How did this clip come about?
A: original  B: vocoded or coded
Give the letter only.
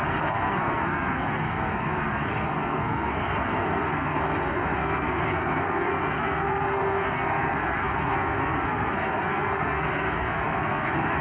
B